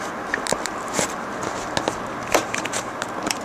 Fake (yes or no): no